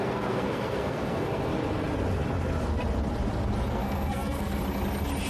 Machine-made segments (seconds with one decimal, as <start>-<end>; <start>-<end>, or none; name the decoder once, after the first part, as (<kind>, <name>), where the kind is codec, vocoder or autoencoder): 0.0-1.5 (codec, SNAC); 3.7-4.6